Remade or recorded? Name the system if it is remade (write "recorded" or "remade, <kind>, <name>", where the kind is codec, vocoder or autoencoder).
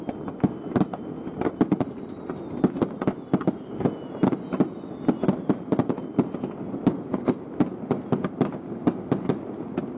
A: recorded